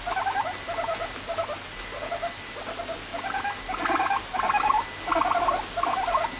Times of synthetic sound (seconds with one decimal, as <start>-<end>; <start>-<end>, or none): none